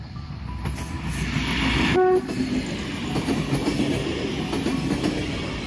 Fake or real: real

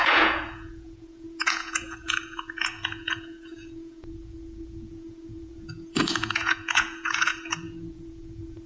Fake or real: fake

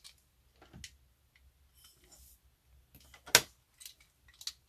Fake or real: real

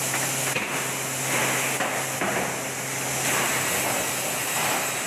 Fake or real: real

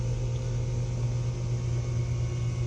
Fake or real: real